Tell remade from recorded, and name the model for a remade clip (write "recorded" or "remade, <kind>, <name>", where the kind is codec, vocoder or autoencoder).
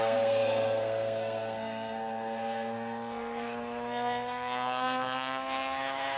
remade, codec, SNAC